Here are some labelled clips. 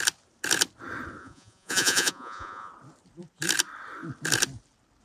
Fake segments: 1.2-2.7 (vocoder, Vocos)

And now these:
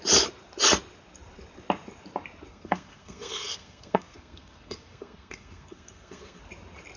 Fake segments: 2.5-6.4 (codec, SNAC)

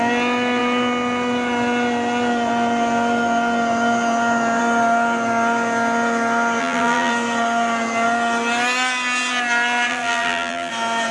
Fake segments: 6.6-7.1 (vocoder, BigVGAN v2); 9.9-10.7

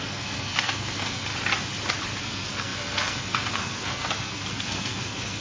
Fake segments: 0.0-1.3 (codec, SNAC); 2.2-5.4

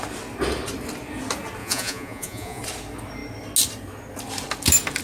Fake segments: 1.6-2.6 (vocoder, Vocos)

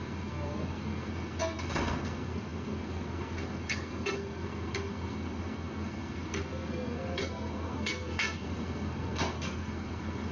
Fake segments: 0.0-10.3 (codec, SNAC)

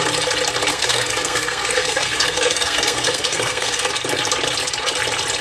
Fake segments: 0.7-3.9 (codec, SNAC)